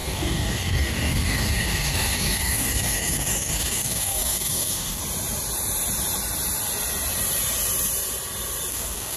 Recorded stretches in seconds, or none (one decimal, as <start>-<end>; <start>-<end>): 5.0-8.7